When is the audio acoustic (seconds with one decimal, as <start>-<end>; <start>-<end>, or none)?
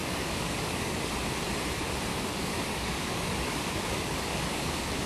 1.1-2.1